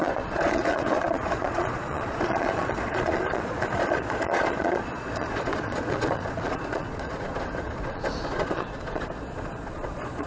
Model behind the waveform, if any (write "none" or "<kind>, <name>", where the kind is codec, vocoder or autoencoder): vocoder, Vocos